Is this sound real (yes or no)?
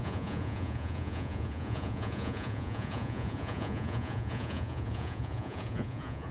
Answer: no